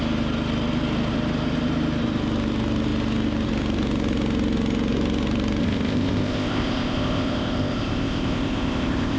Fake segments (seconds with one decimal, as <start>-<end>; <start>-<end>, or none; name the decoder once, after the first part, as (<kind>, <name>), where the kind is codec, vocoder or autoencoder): 5.6-9.2 (codec, ZipCodec)